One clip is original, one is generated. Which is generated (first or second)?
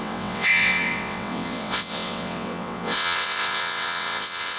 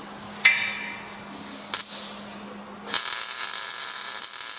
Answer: first